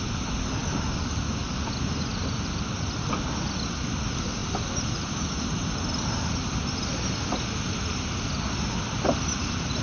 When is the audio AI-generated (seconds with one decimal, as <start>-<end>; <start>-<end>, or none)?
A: none